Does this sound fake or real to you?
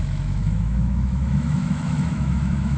fake